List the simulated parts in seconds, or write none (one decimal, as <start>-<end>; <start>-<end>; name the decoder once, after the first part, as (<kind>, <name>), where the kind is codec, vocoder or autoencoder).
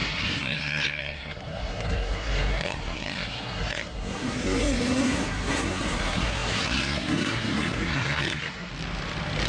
0.0-8.7 (codec, SNAC)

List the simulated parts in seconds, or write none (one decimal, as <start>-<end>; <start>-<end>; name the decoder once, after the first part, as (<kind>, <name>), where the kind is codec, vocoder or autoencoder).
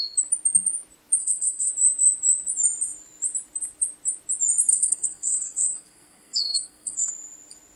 1.2-1.7 (codec, SNAC); 4.7-7.1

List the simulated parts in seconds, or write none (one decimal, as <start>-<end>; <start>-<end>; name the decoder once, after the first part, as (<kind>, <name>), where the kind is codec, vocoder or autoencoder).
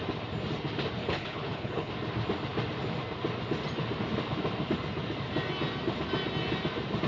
1.0-1.9 (codec, HILCodec)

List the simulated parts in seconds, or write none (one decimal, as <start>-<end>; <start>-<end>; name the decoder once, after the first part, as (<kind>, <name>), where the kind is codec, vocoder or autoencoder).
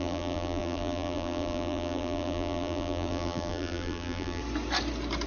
0.0-4.4 (vocoder, BigVGAN v2)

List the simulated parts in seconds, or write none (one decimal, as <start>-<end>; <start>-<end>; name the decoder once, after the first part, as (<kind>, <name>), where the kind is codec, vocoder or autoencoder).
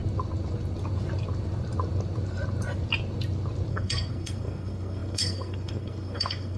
3.7-6.6 (codec, SNAC)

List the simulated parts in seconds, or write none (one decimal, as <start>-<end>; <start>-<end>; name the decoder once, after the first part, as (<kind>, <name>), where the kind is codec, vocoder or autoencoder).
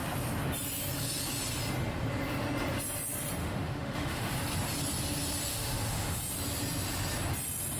3.4-4.3 (autoencoder, DAC-VAE); 5.5-6.2